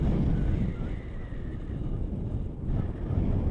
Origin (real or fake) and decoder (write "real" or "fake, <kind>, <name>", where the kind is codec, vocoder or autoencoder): real